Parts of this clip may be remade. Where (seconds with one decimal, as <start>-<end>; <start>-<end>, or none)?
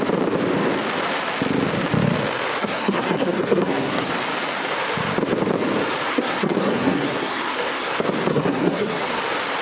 2.6-4.1; 6.1-7.9; 8.3-9.2